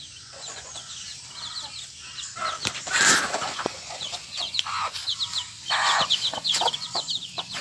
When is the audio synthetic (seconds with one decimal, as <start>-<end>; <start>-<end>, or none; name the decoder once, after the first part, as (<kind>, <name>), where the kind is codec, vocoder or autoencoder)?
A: 0.0-1.1 (vocoder, Vocos); 3.4-5.0; 5.6-7.6